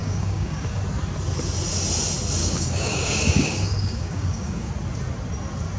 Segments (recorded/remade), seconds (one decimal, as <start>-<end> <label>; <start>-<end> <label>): 0.0-0.8 remade; 0.8-2.4 recorded; 2.4-4.7 remade; 4.7-5.8 recorded